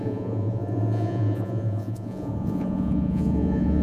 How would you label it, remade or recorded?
remade